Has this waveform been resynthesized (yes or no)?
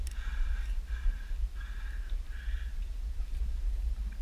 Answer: no